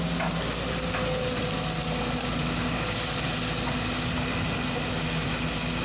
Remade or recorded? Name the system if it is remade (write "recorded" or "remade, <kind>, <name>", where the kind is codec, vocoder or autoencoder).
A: recorded